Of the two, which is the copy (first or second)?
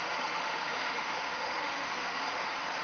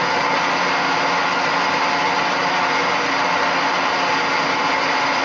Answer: first